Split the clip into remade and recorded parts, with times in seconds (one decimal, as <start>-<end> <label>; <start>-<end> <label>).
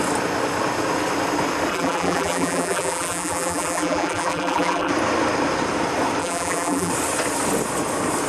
0.0-1.7 recorded; 1.7-4.9 remade; 4.9-6.2 recorded; 6.2-6.9 remade; 6.9-8.3 recorded